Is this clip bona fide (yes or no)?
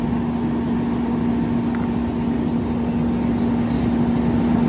yes